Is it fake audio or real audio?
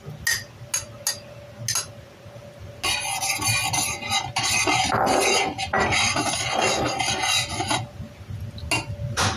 real